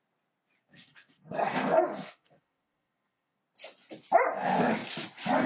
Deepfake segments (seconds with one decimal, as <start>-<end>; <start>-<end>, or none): 0.7-3.4

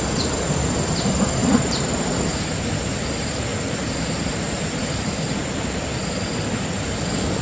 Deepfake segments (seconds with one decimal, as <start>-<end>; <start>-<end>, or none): 1.4-2.4

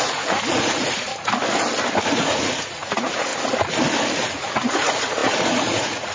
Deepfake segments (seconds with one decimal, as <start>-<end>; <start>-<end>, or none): 0.0-1.1; 2.1-3.3; 4.3-6.1